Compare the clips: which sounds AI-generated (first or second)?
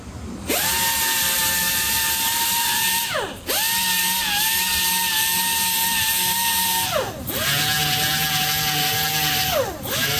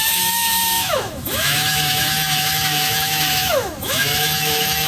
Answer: second